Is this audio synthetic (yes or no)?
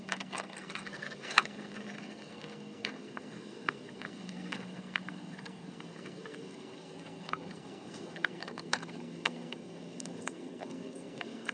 yes